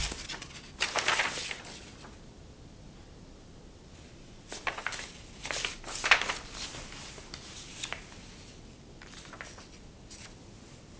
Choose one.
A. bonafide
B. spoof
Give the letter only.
A